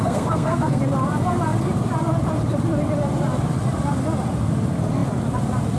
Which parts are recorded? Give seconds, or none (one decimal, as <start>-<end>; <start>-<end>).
0.8-5.8